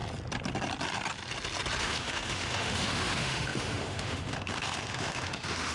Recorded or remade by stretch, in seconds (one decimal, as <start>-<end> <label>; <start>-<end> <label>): 0.0-1.8 recorded; 1.8-5.7 remade